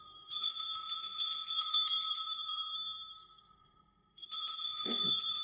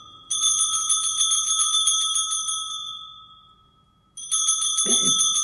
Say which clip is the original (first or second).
second